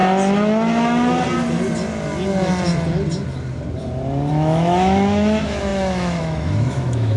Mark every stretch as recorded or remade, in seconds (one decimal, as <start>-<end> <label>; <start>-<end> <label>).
0.0-4.3 recorded; 4.3-7.2 remade